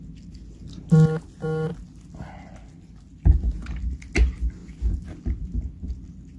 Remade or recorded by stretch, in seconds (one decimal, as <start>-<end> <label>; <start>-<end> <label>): 0.0-6.4 recorded